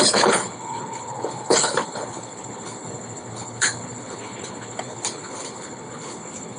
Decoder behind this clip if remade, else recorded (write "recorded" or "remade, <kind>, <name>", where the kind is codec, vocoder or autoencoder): remade, codec, HILCodec